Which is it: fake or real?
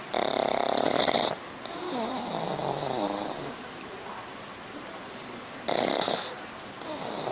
real